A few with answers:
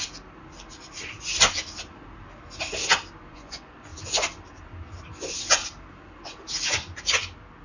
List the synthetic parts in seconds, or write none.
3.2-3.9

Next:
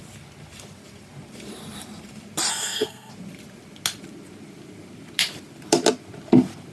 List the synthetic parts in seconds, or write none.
2.5-3.1

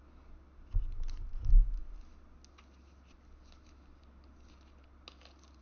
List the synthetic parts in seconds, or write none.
none

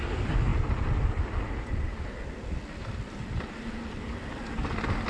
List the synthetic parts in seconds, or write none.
none